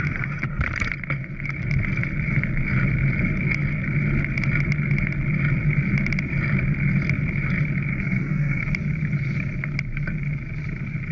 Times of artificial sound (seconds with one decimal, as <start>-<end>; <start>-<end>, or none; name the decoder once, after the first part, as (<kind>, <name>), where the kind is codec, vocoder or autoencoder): 7.9-8.6 (codec, SNAC)